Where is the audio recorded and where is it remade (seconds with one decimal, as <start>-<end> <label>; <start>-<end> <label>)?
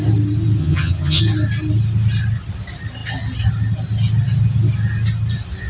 0.0-0.6 recorded; 0.6-1.2 remade; 1.2-5.7 recorded